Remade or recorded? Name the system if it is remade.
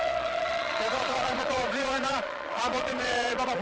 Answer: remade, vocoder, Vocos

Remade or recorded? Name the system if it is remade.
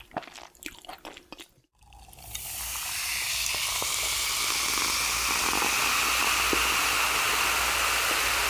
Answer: recorded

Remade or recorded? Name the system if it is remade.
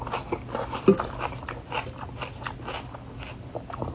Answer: recorded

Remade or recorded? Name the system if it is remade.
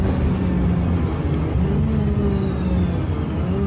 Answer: recorded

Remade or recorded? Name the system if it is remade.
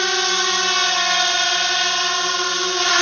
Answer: recorded